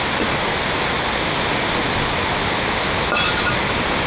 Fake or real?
real